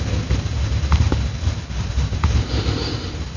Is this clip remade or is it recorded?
recorded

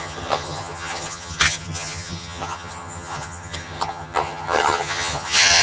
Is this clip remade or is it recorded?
remade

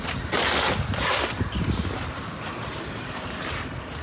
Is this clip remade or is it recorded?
recorded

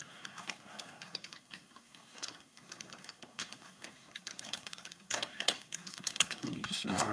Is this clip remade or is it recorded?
remade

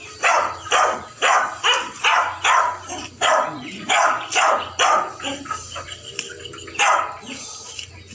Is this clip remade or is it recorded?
recorded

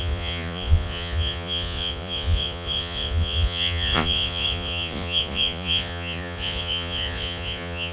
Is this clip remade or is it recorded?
remade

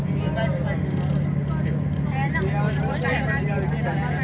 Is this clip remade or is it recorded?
recorded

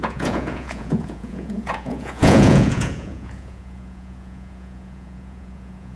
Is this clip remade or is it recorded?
remade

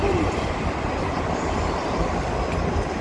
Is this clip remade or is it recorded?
recorded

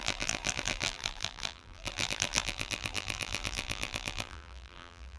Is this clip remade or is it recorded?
remade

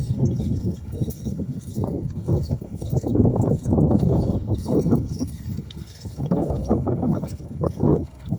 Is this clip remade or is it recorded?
remade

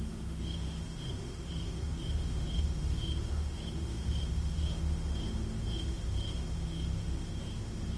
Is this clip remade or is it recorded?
remade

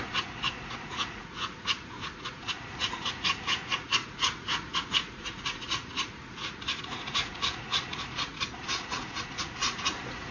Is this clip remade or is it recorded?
remade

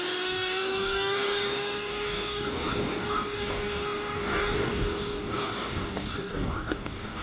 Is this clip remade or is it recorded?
remade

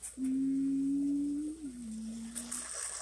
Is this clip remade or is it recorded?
recorded